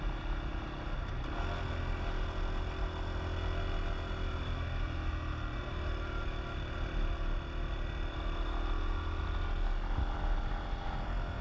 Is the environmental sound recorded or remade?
recorded